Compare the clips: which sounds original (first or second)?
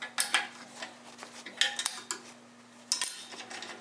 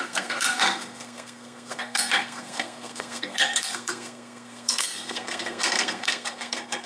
first